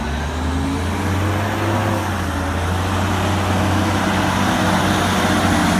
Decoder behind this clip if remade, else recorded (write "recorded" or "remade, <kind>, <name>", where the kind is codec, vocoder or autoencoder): recorded